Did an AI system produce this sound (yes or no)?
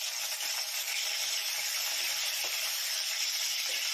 no